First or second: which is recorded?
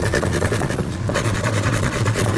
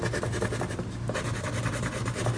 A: second